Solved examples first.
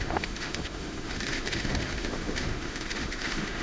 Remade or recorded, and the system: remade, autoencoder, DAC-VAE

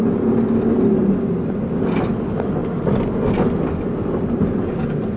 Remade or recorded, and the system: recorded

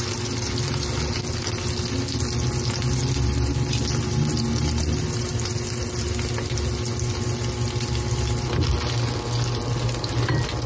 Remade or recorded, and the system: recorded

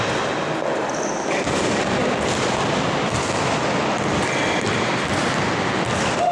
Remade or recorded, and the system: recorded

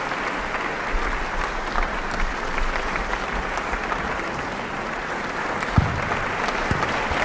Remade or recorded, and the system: recorded